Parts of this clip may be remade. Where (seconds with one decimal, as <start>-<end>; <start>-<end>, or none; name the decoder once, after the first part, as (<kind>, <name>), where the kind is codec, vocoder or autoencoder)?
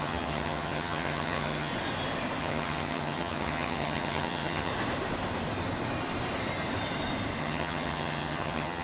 0.0-1.7 (vocoder, HiFi-GAN); 2.4-4.7; 7.4-8.8